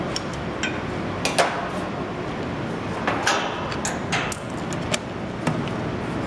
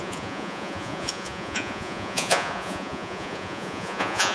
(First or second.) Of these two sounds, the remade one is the second